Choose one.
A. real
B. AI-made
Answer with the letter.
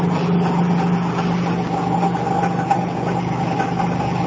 A